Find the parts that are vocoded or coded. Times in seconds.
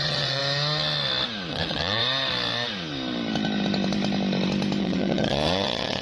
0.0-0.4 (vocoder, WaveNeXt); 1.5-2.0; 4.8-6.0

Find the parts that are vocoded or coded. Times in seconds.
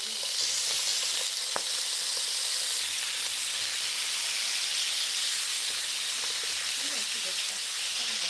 none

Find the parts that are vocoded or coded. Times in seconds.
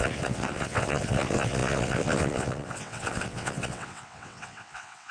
0.0-5.1 (vocoder, WaveNeXt)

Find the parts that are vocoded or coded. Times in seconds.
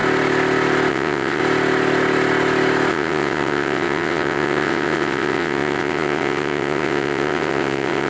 0.9-1.4 (vocoder, WaveNeXt); 2.9-8.1